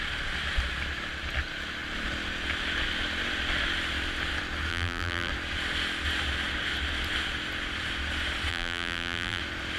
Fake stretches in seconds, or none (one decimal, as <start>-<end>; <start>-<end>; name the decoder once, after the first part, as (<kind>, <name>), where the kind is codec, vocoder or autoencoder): 4.7-5.3 (vocoder, BigVGAN v2); 8.5-9.4